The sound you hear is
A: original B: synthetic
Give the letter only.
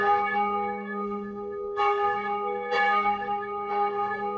B